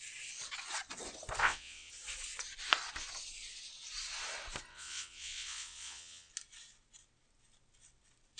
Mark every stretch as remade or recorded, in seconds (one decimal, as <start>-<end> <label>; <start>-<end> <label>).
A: 0.0-1.4 recorded; 1.4-1.9 remade; 1.9-4.7 recorded; 4.7-6.3 remade; 6.3-8.4 recorded

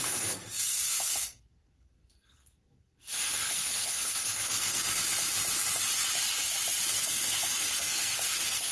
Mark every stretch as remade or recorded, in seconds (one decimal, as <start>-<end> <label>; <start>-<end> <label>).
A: 0.0-5.0 remade; 5.0-6.9 recorded; 6.9-8.7 remade

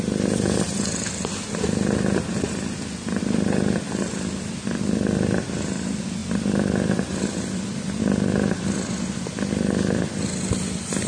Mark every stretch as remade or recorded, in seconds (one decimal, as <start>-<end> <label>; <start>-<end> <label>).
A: 0.0-11.1 recorded

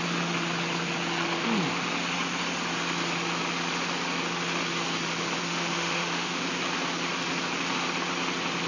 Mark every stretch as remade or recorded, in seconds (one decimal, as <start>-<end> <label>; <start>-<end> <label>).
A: 0.0-5.4 recorded; 5.4-6.4 remade; 6.4-8.7 recorded

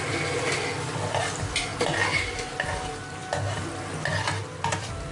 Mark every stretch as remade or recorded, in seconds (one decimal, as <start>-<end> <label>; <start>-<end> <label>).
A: 0.0-5.1 recorded

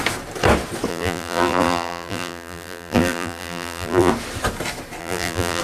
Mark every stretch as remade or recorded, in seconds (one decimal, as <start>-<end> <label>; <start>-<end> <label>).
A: 0.0-0.9 recorded; 0.9-4.1 remade; 4.1-5.0 recorded; 5.0-5.6 remade

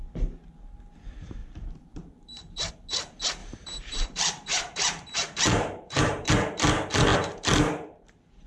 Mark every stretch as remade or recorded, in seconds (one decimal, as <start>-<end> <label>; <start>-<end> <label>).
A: 0.0-1.4 recorded; 1.4-2.7 remade; 2.7-3.4 recorded; 3.4-6.3 remade; 6.3-8.5 recorded